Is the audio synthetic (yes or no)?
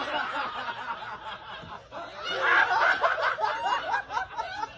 no